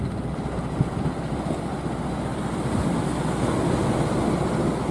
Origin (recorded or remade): recorded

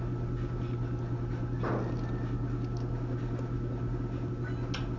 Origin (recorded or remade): recorded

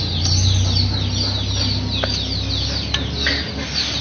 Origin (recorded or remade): recorded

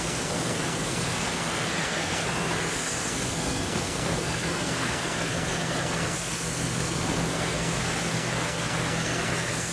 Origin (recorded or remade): remade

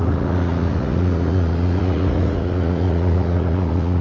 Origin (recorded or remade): remade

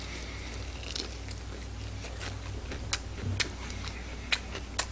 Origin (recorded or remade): recorded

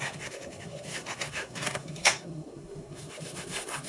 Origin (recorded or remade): remade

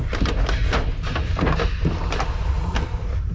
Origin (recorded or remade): recorded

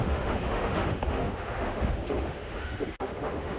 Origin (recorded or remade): remade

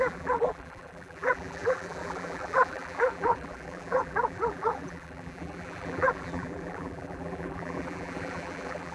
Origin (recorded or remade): remade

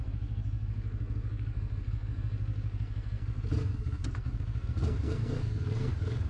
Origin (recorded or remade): remade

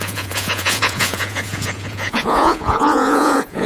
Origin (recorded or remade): remade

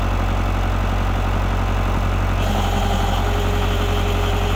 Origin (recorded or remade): recorded